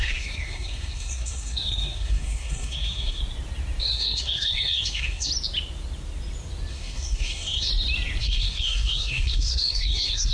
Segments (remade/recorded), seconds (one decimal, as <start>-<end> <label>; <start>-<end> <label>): 0.0-3.2 remade; 3.2-3.8 recorded; 3.8-5.3 remade; 5.3-6.7 recorded; 6.7-7.7 remade; 7.7-8.2 recorded; 8.2-10.3 remade